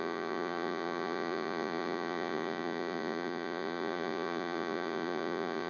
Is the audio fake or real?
fake